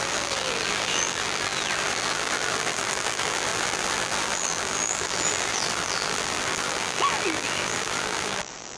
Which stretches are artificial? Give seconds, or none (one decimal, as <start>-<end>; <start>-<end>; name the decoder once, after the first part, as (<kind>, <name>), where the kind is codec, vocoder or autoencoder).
0.0-8.8 (vocoder, BigVGAN v2)